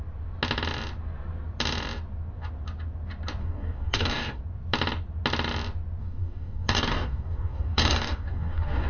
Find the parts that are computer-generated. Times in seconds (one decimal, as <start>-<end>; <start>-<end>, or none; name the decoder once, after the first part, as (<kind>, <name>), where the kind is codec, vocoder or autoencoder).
3.4-4.4 (codec, DAC); 6.0-8.9